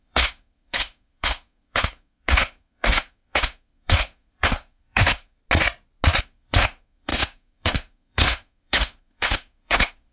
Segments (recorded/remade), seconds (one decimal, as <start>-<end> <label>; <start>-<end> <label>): 0.0-5.4 remade; 5.4-6.2 recorded; 6.2-10.1 remade